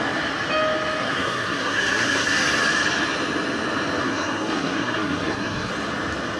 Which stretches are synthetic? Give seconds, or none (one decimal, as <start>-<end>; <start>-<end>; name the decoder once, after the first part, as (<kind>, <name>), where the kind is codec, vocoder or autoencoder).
1.0-2.4 (codec, SNAC); 4.0-5.7